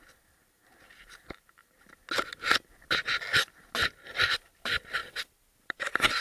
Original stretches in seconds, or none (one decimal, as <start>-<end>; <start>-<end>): 0.0-0.4; 1.8-5.0